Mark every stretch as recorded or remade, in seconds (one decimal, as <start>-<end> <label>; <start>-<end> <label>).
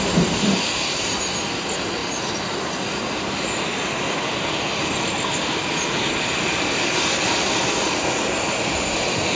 0.0-9.4 recorded